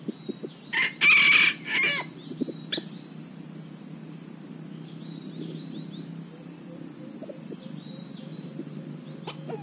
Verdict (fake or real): real